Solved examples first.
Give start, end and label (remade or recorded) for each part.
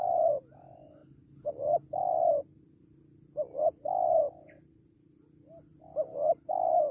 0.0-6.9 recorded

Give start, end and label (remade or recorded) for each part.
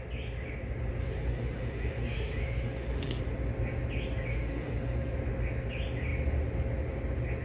0.0-1.0 recorded; 1.0-3.2 remade; 3.2-4.3 recorded; 4.3-5.1 remade; 5.1-7.4 recorded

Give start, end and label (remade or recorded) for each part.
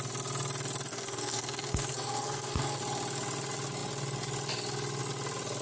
0.0-0.9 recorded; 0.9-2.8 remade; 2.8-5.6 recorded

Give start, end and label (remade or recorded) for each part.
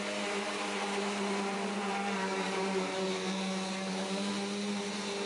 0.0-2.2 recorded; 2.2-4.3 remade; 4.3-5.3 recorded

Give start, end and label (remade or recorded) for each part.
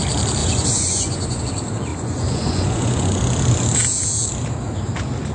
0.0-0.4 recorded; 0.4-1.4 remade; 1.4-1.9 recorded; 1.9-3.2 remade; 3.2-5.3 recorded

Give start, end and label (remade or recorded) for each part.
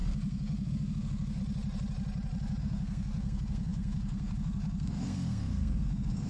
0.0-1.4 remade; 1.4-2.6 recorded; 2.6-6.3 remade